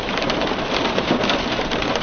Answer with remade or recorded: remade